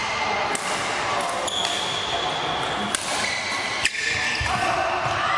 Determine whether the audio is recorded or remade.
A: recorded